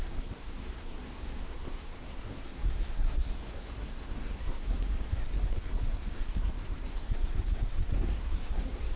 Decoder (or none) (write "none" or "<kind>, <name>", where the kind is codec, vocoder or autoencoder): codec, SNAC